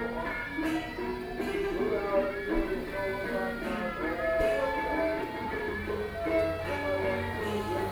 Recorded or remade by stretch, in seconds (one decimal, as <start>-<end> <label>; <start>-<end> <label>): 0.0-5.1 recorded; 5.1-5.8 remade; 5.8-7.9 recorded